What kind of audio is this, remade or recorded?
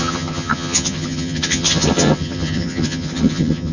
remade